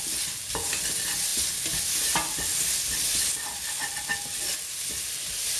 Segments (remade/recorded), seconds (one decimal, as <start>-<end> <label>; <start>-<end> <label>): 0.0-5.6 recorded